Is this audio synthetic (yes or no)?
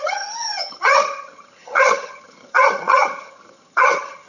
yes